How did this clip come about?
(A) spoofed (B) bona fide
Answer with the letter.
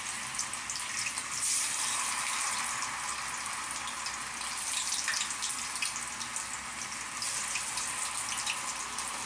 B